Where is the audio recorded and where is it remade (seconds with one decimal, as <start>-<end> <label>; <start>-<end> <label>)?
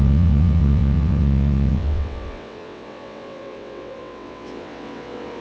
0.0-5.4 remade